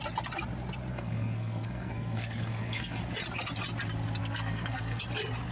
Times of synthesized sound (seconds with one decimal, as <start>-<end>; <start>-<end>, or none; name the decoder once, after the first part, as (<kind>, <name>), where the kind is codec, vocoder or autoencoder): 0.9-3.0 (codec, SNAC); 4.2-5.0